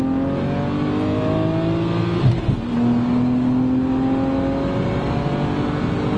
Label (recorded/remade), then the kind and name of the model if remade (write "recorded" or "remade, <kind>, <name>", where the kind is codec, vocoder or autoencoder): recorded